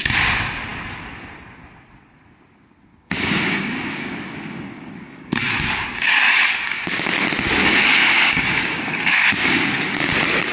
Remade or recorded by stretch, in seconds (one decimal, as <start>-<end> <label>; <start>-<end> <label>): 0.0-2.9 recorded; 2.9-7.2 remade; 7.2-8.0 recorded; 8.0-10.0 remade; 10.0-10.5 recorded